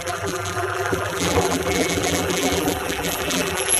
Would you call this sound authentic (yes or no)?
no